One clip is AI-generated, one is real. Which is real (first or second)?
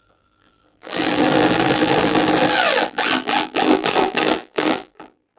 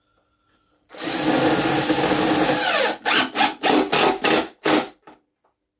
second